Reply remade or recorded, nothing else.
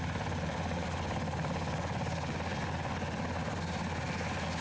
recorded